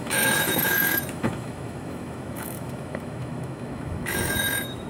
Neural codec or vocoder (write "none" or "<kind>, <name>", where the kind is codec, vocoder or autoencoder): autoencoder, DAC-VAE